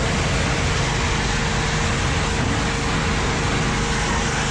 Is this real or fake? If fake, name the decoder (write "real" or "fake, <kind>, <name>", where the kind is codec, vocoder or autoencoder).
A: real